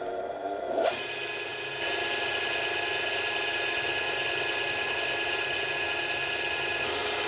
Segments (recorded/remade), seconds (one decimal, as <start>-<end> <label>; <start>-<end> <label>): 0.0-7.3 recorded